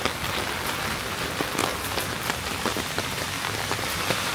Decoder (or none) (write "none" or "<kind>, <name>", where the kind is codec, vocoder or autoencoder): vocoder, BigVGAN v2